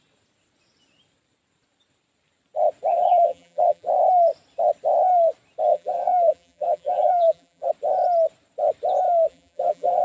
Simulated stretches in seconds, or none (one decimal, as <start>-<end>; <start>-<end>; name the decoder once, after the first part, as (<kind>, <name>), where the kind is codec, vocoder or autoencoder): 2.9-3.9 (vocoder, BigVGAN v2); 5.7-7.7; 9.3-10.0